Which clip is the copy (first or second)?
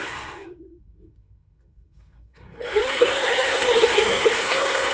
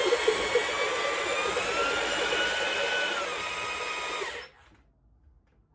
first